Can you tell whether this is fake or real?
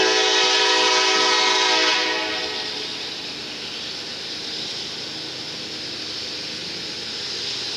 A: real